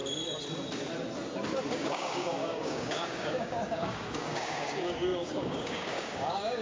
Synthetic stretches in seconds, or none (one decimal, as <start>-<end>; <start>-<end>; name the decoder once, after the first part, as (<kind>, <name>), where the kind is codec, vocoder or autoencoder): 1.7-6.6 (codec, DAC)